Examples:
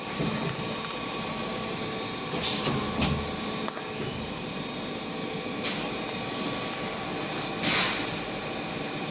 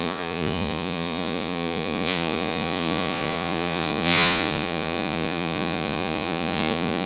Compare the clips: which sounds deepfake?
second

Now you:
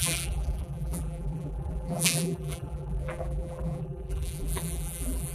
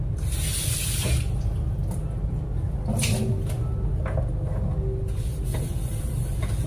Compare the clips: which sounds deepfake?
first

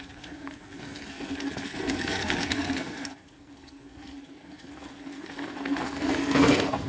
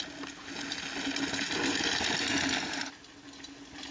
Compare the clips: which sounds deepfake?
first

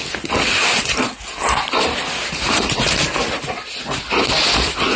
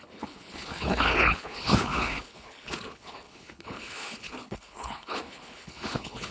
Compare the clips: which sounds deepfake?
second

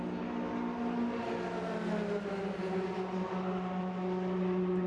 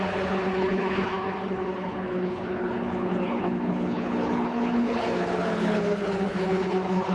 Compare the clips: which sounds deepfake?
second